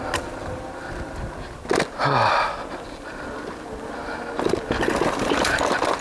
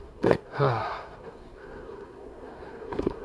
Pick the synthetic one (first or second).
second